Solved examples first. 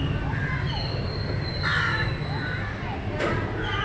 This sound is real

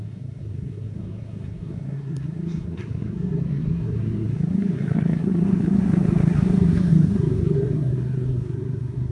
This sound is fake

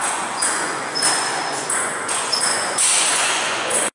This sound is fake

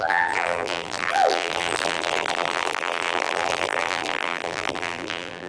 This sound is fake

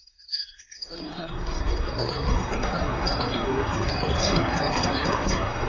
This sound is fake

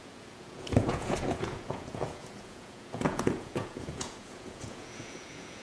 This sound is fake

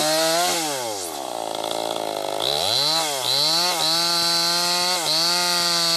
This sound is real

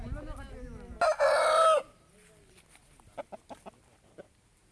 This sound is real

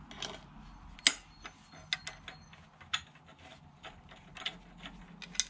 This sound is real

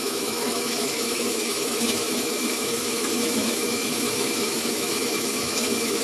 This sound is fake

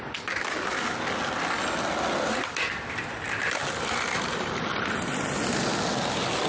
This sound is real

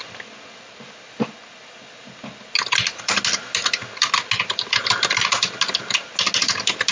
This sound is real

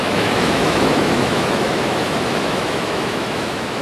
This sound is fake